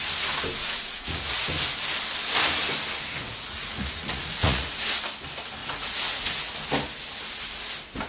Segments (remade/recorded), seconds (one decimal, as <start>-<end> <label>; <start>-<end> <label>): 0.0-0.6 recorded; 0.6-1.5 remade; 1.5-3.2 recorded; 3.2-4.7 remade; 4.7-5.6 recorded; 5.6-6.5 remade; 6.5-8.1 recorded